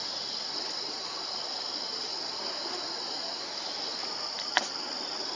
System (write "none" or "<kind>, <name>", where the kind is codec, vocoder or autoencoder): none